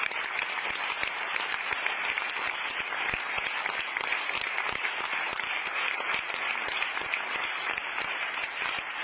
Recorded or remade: remade